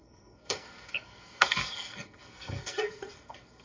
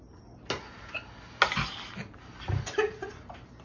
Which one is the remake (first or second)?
first